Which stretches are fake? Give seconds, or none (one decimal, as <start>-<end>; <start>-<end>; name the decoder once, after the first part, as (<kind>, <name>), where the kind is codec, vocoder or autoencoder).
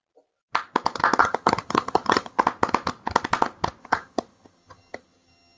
1.2-2.4 (vocoder, HiFi-GAN); 3.8-5.6